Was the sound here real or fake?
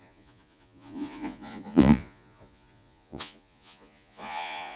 fake